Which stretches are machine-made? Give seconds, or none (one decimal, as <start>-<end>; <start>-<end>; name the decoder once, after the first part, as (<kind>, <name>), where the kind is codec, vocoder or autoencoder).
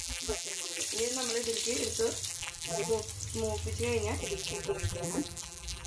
0.0-0.8 (vocoder, BigVGAN v2); 2.3-2.9; 4.2-5.9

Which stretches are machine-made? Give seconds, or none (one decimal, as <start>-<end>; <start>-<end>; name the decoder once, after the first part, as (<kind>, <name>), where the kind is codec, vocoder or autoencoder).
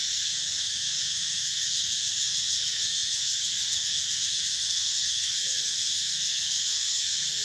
0.0-7.4 (codec, SNAC)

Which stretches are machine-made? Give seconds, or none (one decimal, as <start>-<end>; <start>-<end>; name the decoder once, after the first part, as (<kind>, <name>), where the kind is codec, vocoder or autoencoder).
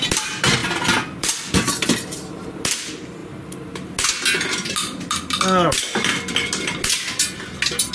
0.6-2.6 (vocoder, BigVGAN v2)